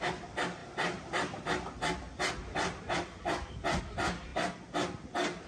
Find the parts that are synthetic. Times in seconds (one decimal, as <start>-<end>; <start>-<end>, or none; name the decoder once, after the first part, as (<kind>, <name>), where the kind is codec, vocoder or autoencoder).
none